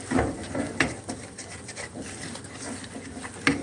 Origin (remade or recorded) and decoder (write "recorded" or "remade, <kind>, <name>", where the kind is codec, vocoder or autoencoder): recorded